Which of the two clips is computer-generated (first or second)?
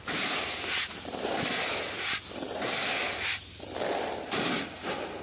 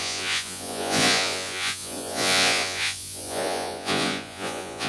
second